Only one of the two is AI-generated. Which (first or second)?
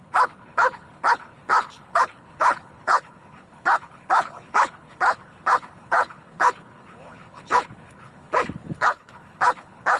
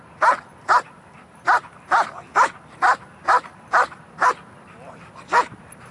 first